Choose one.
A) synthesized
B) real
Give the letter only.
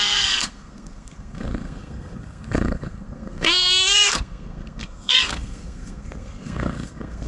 A